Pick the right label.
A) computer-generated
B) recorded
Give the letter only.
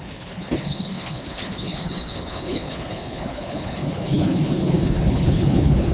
A